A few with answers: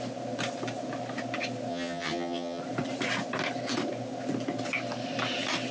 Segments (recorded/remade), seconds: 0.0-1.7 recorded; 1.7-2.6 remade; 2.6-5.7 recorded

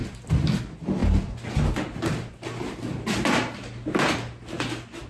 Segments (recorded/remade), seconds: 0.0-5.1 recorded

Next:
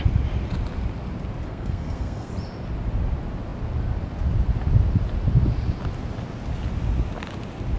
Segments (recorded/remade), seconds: 0.0-1.5 recorded; 1.5-2.3 remade; 2.3-7.8 recorded

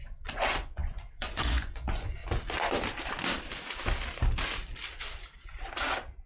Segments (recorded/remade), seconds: 0.0-2.2 remade; 2.2-6.3 recorded

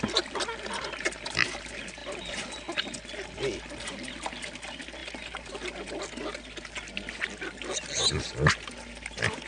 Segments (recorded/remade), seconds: 0.0-9.5 recorded

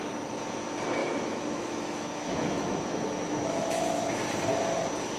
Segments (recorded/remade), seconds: 0.0-1.0 recorded; 1.0-4.1 remade; 4.1-5.2 recorded

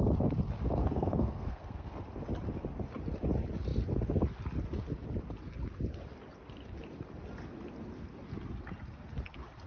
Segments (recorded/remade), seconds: 0.0-0.8 recorded; 0.8-2.0 remade; 2.0-9.7 recorded

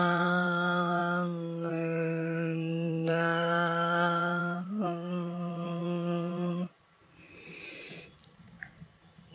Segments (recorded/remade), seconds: 0.0-1.0 remade; 1.0-1.7 recorded; 1.7-9.3 remade